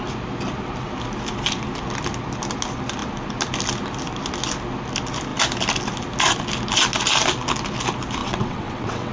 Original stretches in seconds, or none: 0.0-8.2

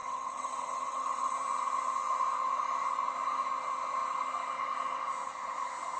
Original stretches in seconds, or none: 1.3-6.0

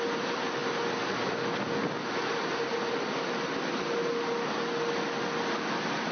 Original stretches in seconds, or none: 0.0-6.1